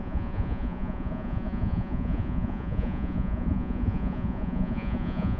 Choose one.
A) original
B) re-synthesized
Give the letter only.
B